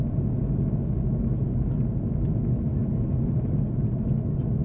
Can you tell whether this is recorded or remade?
recorded